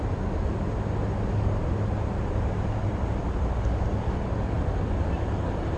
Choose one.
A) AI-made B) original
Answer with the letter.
B